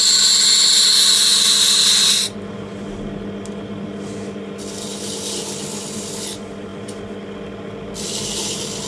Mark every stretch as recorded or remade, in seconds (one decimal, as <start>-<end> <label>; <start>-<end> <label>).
0.0-8.9 recorded